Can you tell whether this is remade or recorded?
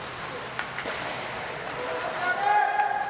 recorded